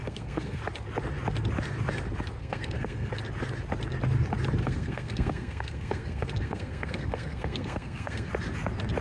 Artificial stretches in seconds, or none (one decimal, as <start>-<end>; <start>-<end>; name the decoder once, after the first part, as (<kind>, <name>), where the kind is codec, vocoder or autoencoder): 0.0-0.6 (codec, SNAC); 2.4-3.1; 4.6-8.3